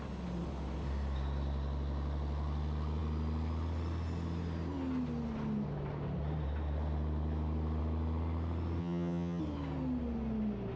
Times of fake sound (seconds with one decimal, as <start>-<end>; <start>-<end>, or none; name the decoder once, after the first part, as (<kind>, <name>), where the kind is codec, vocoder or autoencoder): 8.8-9.4 (vocoder, HiFi-GAN)